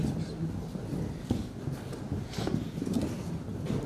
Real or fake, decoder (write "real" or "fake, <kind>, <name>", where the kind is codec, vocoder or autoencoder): real